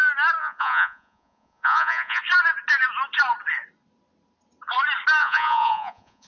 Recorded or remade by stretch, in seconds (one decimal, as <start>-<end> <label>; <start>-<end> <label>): 0.0-0.4 recorded; 0.4-2.2 remade; 2.2-5.2 recorded; 5.2-6.3 remade